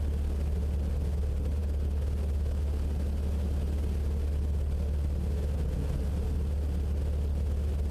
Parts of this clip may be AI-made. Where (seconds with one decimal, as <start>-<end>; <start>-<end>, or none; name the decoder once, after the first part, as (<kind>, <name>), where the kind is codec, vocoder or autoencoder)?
none